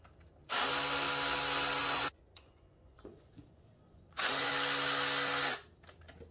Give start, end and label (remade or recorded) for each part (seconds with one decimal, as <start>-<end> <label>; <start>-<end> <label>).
0.0-1.8 recorded; 1.8-4.5 remade; 4.5-6.3 recorded